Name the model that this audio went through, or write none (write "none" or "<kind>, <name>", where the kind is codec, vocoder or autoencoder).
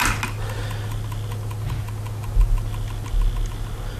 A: none